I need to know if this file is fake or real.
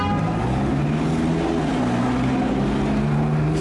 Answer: real